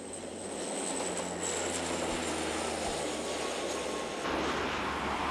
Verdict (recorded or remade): recorded